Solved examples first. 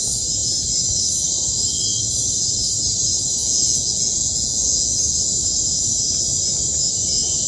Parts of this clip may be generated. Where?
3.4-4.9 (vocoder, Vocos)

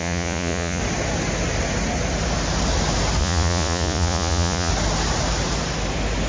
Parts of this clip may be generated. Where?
0.0-0.8 (vocoder, Vocos); 3.2-4.7